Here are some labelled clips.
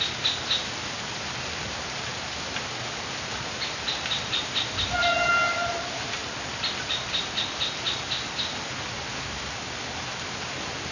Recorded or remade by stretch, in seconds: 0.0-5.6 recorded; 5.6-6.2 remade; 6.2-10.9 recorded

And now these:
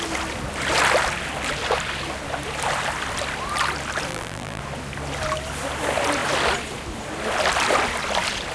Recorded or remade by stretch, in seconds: 0.0-4.1 recorded; 4.1-4.6 remade; 4.6-8.5 recorded

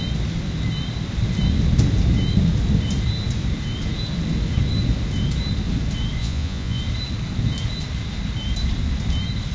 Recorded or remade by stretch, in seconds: 0.0-6.2 recorded; 6.2-6.8 remade; 6.8-9.5 recorded

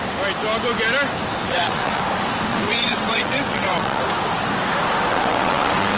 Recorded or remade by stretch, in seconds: 0.0-1.4 recorded; 1.4-2.0 remade; 2.0-2.5 recorded; 2.5-4.0 remade; 4.0-5.1 recorded; 5.1-6.0 remade

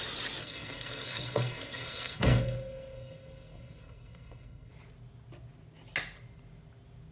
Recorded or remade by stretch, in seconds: 0.0-0.4 recorded; 0.4-4.7 remade; 4.7-7.1 recorded

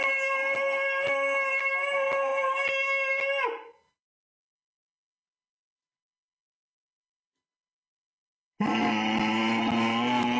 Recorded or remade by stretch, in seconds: 0.0-10.4 recorded

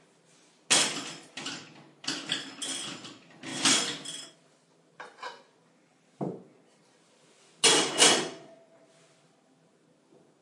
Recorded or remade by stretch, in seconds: 0.0-10.4 recorded